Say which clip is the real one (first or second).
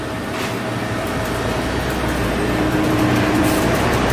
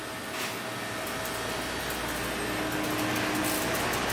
second